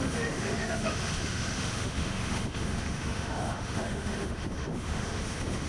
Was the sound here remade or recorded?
remade